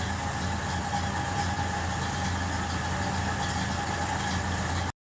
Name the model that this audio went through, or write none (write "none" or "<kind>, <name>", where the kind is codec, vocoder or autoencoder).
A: none